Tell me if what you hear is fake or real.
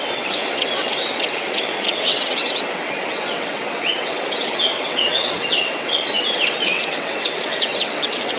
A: fake